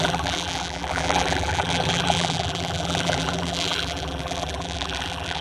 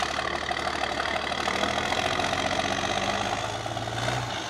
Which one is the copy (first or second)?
first